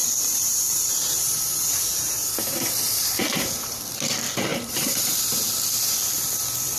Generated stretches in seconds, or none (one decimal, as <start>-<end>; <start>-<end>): 0.0-3.8; 4.5-5.2